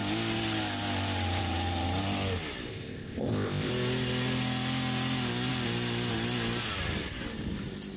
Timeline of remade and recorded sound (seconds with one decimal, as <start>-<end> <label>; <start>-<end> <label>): 0.0-2.7 recorded; 2.7-3.7 remade; 3.7-8.0 recorded